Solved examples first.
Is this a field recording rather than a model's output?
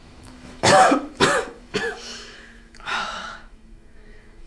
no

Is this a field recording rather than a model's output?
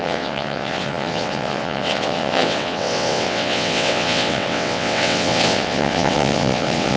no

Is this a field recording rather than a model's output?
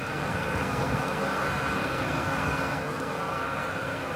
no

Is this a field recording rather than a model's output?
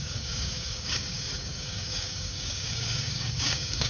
no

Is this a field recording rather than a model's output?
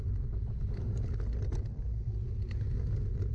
yes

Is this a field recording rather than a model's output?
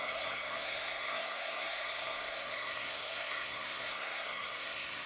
no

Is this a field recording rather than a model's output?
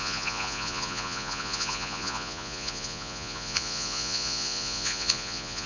no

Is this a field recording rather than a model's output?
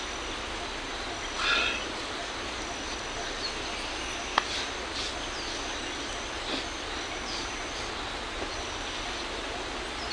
yes